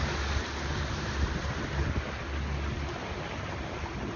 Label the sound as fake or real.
real